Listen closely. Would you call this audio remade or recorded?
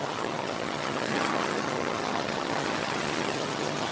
remade